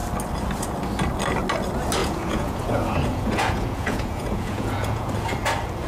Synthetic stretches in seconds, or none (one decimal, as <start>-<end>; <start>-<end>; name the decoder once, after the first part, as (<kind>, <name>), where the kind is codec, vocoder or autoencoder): 2.0-5.1 (vocoder, Vocos)